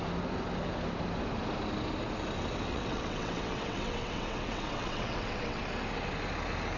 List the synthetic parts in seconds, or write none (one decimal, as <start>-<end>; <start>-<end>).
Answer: 2.7-5.6